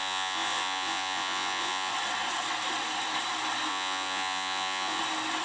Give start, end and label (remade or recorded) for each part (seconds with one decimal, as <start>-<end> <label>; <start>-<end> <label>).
0.0-1.9 remade; 1.9-3.7 recorded; 3.7-5.0 remade; 5.0-5.4 recorded